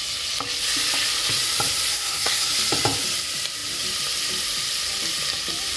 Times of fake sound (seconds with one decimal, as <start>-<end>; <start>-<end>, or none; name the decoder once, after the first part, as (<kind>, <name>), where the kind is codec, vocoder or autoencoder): 1.9-2.5 (codec, SNAC)